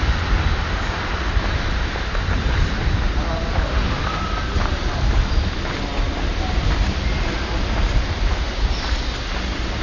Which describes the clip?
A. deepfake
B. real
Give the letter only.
B